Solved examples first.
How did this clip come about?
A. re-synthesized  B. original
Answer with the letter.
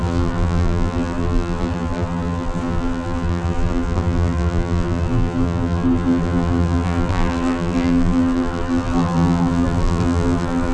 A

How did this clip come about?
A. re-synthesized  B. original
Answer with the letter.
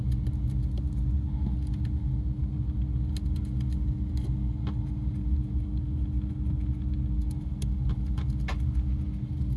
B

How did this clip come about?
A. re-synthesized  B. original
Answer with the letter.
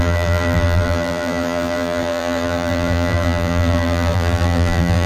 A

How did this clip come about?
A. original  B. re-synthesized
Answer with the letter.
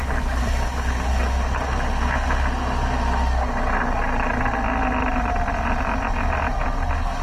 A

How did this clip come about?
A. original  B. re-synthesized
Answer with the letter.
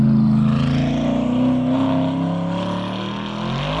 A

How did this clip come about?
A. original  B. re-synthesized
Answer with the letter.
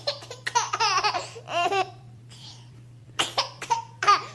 B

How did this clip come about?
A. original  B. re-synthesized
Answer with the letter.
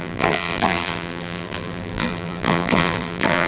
B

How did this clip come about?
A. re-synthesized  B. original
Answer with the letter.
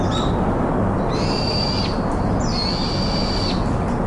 B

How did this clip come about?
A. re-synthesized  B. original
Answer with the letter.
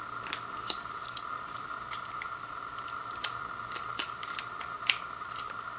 A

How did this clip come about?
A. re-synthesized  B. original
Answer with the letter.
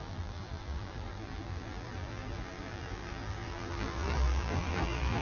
A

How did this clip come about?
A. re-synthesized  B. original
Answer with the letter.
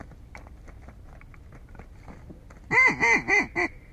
B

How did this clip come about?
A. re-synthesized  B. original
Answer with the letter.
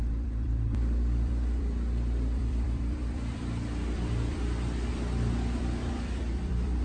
A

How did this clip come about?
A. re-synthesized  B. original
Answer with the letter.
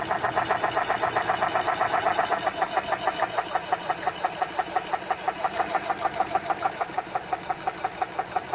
B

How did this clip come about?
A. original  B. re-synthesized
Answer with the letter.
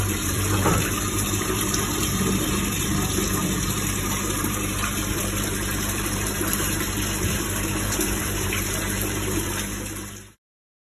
B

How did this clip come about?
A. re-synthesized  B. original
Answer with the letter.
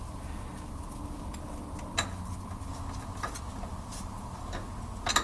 B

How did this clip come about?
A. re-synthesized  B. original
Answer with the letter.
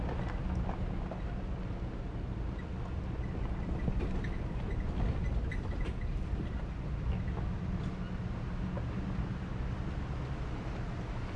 B